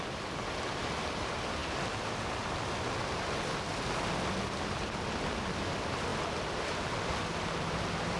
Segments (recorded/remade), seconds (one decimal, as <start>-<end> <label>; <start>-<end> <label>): 0.0-8.2 recorded